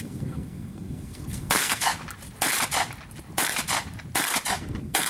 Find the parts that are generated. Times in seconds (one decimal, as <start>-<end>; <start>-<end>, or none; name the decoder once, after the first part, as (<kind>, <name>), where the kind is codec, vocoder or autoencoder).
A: 0.0-2.0 (codec, SNAC); 4.5-5.1